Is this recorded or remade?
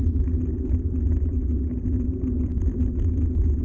recorded